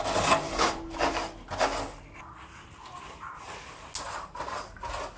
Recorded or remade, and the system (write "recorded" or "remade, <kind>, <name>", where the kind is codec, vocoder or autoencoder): recorded